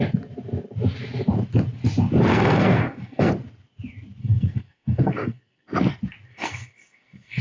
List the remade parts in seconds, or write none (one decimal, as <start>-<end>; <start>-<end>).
2.3-3.3; 4.2-5.7; 6.3-7.4